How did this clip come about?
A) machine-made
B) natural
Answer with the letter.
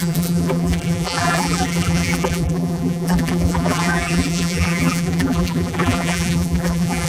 A